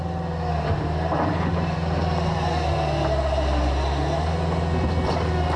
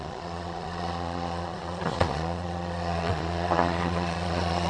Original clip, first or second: first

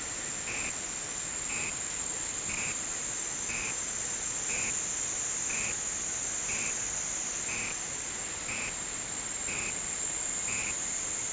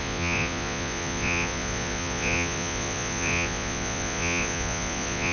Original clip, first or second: first